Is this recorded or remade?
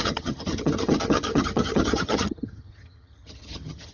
remade